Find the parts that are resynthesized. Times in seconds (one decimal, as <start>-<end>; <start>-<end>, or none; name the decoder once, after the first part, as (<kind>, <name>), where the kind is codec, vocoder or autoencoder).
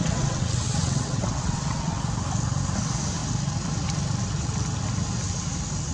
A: 0.0-2.0 (vocoder, WaveNeXt)